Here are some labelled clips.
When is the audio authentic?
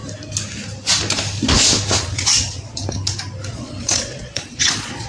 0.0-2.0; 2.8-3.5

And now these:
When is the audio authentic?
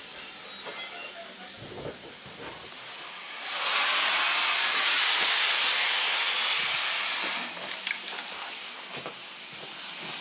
0.0-10.2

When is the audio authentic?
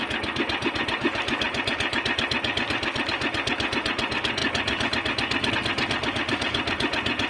0.0-7.3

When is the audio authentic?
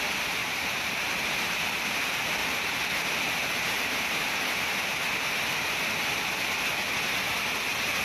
0.0-0.4; 1.7-2.4; 5.0-8.0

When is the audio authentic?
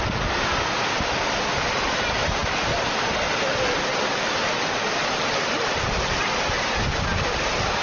0.0-7.8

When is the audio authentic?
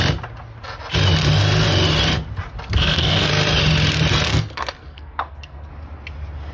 0.0-2.7; 3.3-4.3; 5.7-6.5